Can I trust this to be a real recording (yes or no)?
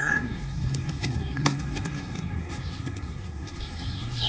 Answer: no